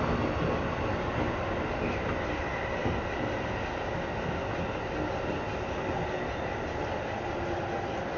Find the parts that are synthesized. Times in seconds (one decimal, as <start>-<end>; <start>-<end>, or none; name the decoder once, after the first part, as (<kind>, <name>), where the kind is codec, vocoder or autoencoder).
none